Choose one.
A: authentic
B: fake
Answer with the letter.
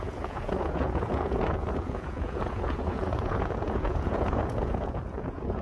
B